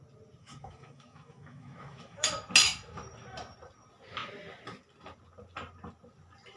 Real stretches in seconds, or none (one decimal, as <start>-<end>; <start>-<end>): 0.0-0.4; 2.3-6.6